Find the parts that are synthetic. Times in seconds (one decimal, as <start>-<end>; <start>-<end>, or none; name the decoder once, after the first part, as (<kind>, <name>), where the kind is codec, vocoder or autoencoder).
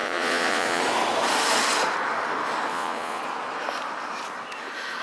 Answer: 0.0-0.8 (vocoder, Vocos); 2.7-3.2